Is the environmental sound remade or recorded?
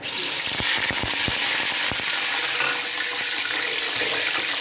recorded